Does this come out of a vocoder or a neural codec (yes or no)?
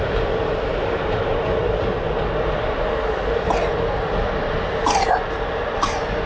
no